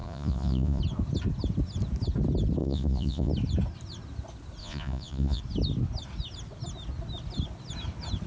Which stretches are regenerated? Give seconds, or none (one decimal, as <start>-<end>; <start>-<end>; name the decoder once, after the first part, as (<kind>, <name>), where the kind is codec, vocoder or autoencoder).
0.0-0.8 (vocoder, Vocos); 2.6-3.3; 4.6-5.4